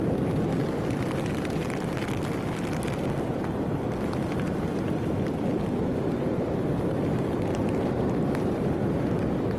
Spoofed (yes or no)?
no